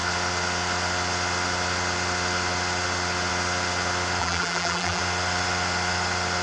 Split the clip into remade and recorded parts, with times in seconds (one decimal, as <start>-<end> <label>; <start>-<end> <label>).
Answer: 0.0-4.2 recorded; 4.2-5.0 remade; 5.0-6.4 recorded